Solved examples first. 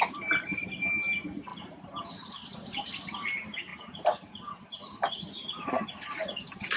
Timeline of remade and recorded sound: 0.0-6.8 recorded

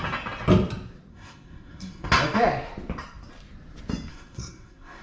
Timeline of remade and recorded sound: 0.0-1.1 recorded; 1.1-2.1 remade; 2.1-4.1 recorded; 4.1-5.0 remade

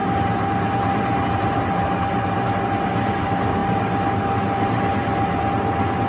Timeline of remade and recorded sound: 0.0-6.1 recorded